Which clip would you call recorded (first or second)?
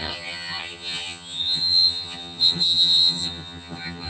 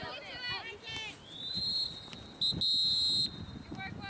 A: second